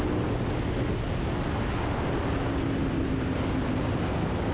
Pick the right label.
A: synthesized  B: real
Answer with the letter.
B